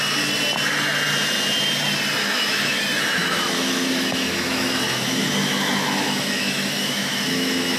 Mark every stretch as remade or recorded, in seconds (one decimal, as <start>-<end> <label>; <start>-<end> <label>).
0.0-2.2 recorded; 2.2-2.8 remade; 2.8-3.2 recorded; 3.2-7.8 remade